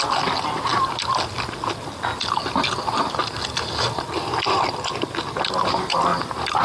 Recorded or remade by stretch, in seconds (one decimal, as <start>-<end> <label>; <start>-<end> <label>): 0.0-6.6 recorded